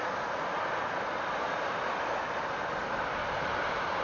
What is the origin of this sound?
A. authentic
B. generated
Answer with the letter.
A